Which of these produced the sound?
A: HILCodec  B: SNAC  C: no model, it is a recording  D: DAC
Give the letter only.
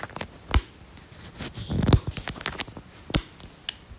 C